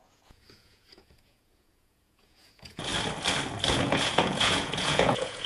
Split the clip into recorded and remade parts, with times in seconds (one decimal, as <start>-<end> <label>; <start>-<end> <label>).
0.0-2.9 remade; 2.9-3.7 recorded; 3.7-5.5 remade

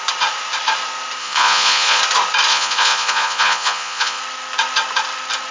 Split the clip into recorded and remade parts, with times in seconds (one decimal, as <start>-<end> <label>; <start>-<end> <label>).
0.0-1.2 recorded; 1.2-2.0 remade; 2.0-2.5 recorded; 2.5-4.2 remade; 4.2-5.5 recorded

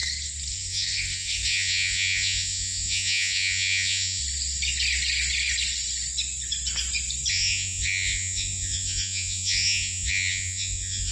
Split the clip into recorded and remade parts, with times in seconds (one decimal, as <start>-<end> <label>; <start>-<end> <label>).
0.0-0.5 recorded; 0.5-4.2 remade; 4.2-7.3 recorded; 7.3-11.1 remade

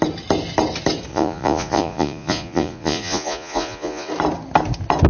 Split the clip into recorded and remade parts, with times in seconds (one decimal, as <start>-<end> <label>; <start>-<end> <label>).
0.0-1.1 recorded; 1.1-4.1 remade; 4.1-5.1 recorded

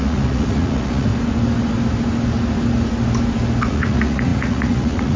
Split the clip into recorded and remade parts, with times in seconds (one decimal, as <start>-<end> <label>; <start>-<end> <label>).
0.0-1.1 remade; 1.1-3.6 recorded; 3.6-5.2 remade

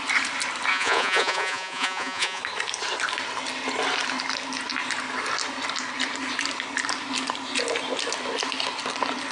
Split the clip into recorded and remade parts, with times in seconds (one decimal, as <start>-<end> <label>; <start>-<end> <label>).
0.0-0.7 recorded; 0.7-2.4 remade; 2.4-9.3 recorded

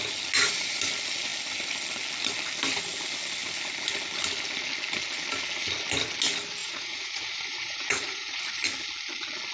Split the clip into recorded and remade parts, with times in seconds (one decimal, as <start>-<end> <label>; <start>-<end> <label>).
0.0-6.6 recorded; 6.6-8.4 remade; 8.4-9.5 recorded

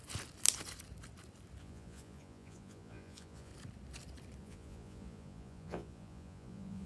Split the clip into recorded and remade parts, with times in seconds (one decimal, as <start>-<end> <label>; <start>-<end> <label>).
0.0-1.6 recorded; 1.6-3.5 remade; 3.5-4.4 recorded; 4.4-6.9 remade